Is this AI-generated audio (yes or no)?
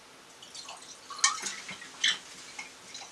no